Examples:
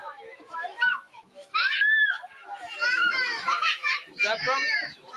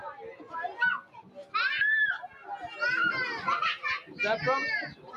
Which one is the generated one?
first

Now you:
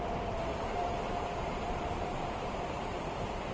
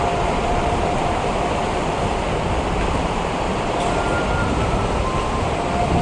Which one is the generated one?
first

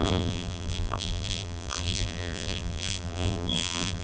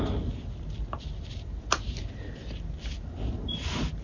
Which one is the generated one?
first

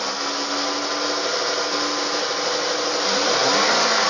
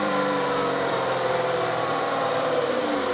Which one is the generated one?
second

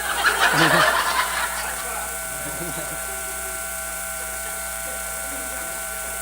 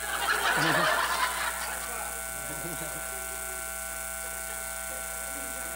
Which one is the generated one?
first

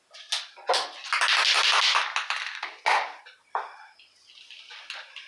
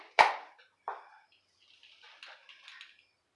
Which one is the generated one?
second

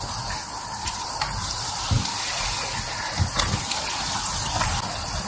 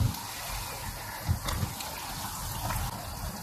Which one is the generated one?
first